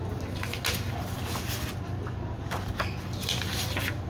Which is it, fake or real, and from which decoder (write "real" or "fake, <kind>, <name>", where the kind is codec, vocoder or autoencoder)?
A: real